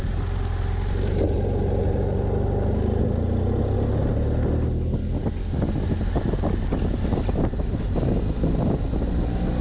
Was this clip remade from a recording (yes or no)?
no